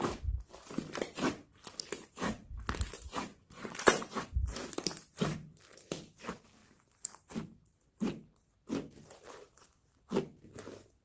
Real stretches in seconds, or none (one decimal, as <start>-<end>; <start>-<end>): 0.0-3.3; 4.3-11.0